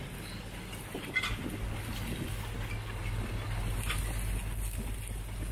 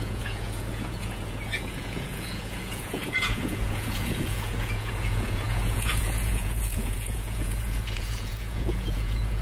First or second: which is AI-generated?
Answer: second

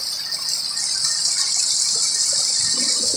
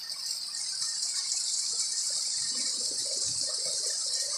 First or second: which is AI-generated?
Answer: second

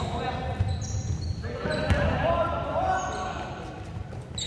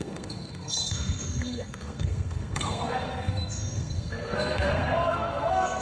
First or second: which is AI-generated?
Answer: second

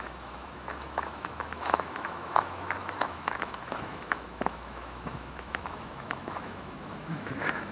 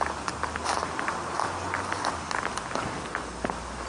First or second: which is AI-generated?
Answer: first